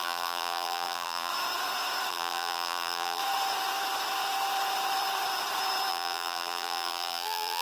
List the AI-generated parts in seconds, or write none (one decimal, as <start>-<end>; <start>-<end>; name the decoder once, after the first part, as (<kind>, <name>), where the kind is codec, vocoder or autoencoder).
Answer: 0.0-1.3 (vocoder, BigVGAN v2); 2.1-3.2; 5.9-7.6